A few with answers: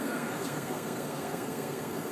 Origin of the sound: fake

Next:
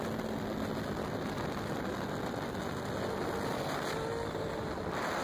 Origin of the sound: real